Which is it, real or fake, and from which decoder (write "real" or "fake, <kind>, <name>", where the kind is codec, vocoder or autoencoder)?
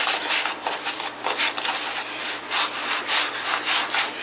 real